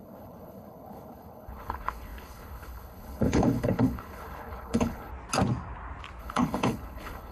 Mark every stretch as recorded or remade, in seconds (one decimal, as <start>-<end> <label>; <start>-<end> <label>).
0.0-5.1 remade; 5.1-6.2 recorded; 6.2-7.3 remade